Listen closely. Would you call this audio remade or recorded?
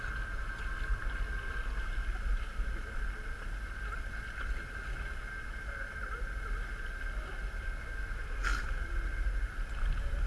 recorded